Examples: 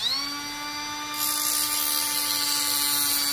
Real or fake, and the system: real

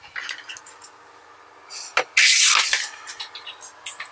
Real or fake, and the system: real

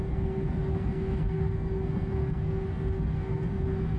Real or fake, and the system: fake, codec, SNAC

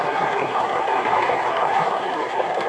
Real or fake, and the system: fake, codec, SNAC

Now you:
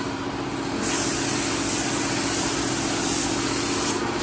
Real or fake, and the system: real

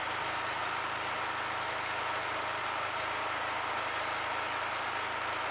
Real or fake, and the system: real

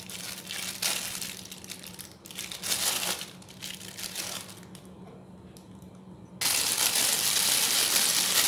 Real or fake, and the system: real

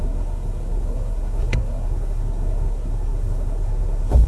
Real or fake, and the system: fake, codec, SNAC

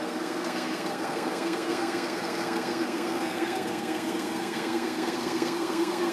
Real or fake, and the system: fake, codec, SNAC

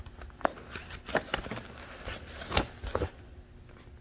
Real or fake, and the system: real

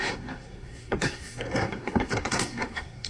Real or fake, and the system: fake, codec, SNAC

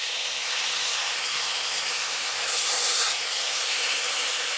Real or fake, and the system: fake, codec, SNAC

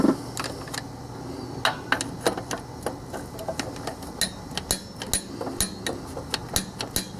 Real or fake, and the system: real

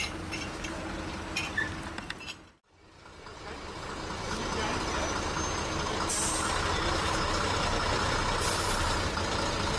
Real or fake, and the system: real